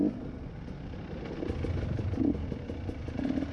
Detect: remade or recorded recorded